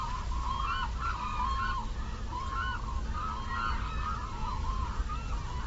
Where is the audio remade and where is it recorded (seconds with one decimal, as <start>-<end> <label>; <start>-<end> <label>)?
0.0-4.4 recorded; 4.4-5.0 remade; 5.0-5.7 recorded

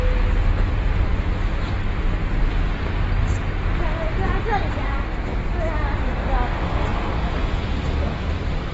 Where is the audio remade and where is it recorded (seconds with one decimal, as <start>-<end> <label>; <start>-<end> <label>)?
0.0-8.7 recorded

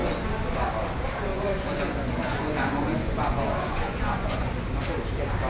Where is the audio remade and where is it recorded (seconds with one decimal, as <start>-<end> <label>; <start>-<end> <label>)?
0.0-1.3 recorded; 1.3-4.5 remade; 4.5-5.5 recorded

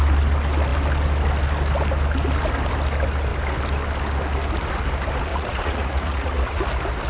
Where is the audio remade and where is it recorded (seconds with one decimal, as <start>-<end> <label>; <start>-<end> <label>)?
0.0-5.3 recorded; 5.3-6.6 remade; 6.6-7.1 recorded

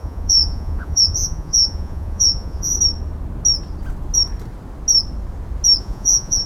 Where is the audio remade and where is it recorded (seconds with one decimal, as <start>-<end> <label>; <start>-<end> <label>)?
0.0-2.7 remade; 2.7-5.8 recorded; 5.8-6.5 remade

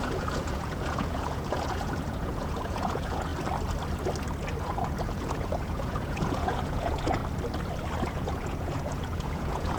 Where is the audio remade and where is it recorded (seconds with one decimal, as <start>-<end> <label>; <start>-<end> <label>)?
0.0-3.3 remade; 3.3-4.6 recorded; 4.6-7.2 remade; 7.2-8.1 recorded; 8.1-9.8 remade